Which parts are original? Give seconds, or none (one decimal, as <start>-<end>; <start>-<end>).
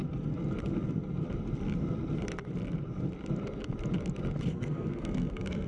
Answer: 0.0-4.5